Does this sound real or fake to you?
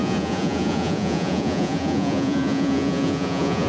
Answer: fake